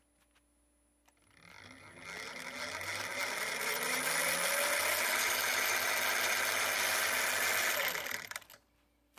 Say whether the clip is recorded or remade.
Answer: recorded